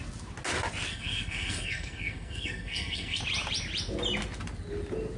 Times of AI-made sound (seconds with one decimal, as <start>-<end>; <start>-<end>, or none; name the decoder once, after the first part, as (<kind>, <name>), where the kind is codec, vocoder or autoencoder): 0.9-3.2 (codec, SNAC)